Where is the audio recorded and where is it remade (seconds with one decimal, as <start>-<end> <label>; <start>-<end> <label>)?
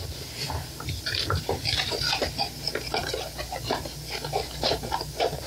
0.0-5.5 recorded